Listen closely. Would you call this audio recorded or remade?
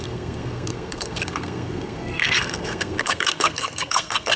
remade